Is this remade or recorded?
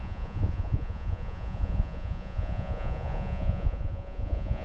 remade